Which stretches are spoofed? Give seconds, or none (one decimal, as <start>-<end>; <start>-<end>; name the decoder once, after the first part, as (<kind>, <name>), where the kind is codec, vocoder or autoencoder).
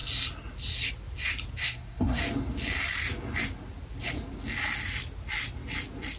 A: 1.6-2.2 (codec, SNAC)